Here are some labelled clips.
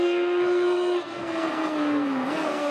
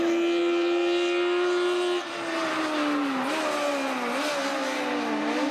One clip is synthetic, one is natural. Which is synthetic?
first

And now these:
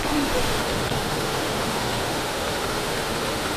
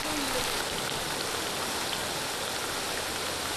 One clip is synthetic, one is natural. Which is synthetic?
first